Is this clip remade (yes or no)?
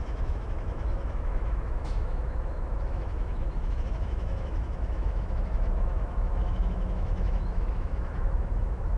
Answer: yes